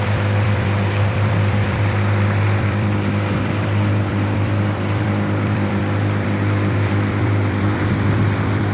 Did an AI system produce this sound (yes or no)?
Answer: yes